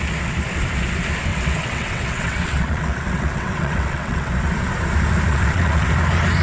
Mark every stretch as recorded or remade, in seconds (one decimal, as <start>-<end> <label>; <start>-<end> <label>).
0.0-1.3 recorded; 1.3-4.3 remade; 4.3-5.3 recorded; 5.3-5.9 remade; 5.9-6.4 recorded